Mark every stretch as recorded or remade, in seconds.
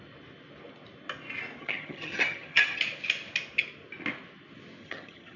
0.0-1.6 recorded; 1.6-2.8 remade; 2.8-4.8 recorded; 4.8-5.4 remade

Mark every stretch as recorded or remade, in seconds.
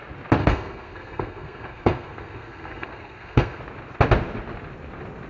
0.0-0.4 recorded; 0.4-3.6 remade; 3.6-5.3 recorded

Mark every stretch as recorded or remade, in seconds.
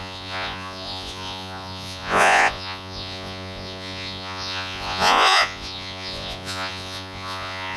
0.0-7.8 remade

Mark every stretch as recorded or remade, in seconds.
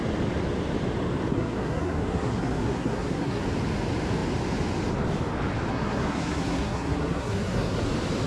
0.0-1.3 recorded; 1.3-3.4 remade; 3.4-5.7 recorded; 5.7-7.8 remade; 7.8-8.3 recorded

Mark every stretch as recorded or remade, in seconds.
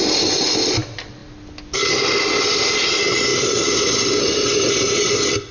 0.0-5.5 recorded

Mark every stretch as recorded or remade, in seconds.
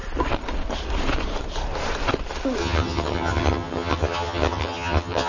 0.0-2.6 recorded; 2.6-5.3 remade